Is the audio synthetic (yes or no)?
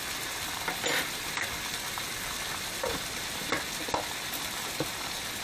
no